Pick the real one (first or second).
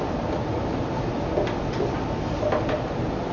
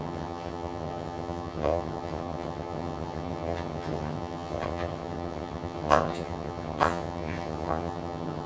first